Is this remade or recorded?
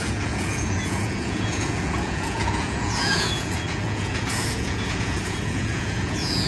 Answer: remade